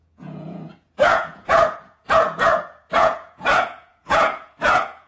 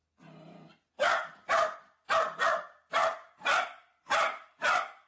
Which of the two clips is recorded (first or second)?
second